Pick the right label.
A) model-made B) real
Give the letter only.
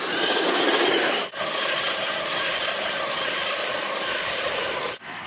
A